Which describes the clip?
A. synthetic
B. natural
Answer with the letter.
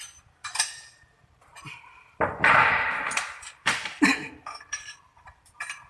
A